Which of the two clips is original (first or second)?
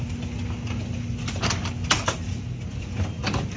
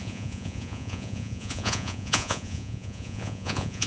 first